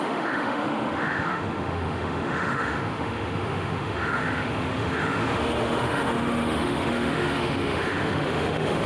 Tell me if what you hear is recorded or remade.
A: remade